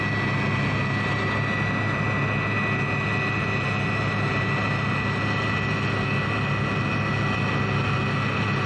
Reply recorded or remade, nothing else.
recorded